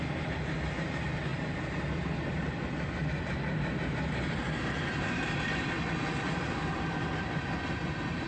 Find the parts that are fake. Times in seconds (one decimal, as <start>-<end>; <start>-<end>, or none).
none